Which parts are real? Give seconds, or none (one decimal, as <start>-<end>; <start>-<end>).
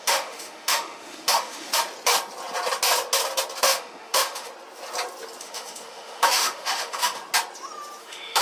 1.7-3.6; 4.5-5.4; 7.2-8.0